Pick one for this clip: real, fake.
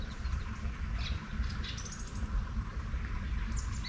real